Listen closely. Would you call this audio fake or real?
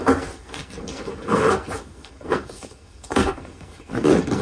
fake